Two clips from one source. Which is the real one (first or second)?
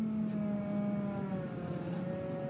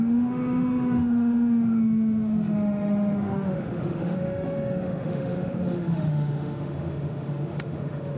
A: first